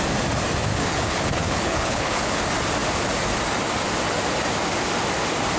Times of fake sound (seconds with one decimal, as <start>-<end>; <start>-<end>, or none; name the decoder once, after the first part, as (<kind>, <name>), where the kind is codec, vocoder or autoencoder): 0.7-2.4 (codec, HILCodec)